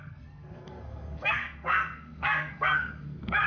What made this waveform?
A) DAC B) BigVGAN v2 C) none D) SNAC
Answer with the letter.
D